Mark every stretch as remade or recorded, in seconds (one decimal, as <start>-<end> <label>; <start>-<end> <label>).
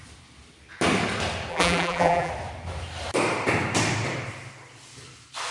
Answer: 0.0-1.5 recorded; 1.5-2.3 remade; 2.3-5.5 recorded